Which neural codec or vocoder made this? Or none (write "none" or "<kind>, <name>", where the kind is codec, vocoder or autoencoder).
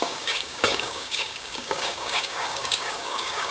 codec, DAC